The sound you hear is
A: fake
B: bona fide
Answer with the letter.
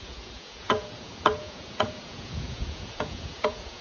A